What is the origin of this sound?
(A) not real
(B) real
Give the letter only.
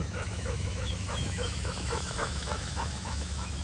A